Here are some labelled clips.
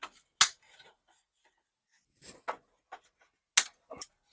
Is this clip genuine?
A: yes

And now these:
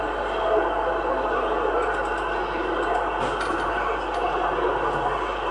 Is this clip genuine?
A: yes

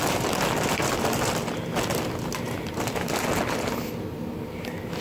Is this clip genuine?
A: yes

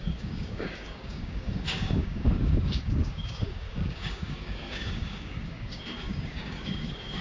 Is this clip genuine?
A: no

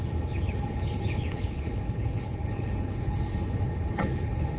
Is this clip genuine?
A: no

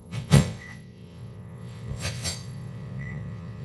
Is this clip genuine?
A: no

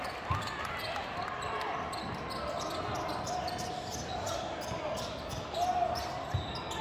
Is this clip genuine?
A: yes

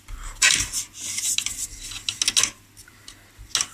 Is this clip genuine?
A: yes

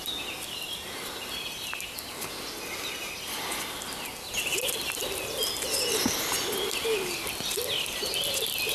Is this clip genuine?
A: yes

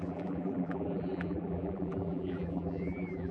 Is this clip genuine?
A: no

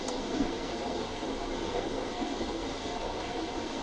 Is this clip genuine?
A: no